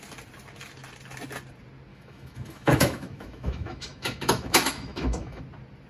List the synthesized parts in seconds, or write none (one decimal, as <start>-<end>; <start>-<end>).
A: 1.9-5.4